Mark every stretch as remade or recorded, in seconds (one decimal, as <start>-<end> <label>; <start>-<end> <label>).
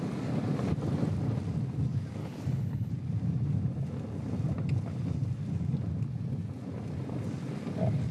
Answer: 0.0-2.2 recorded; 2.2-2.9 remade; 2.9-8.1 recorded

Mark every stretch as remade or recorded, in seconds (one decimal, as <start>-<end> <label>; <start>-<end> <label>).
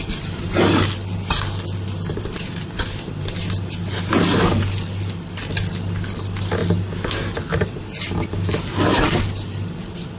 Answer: 0.0-8.9 recorded; 8.9-10.2 remade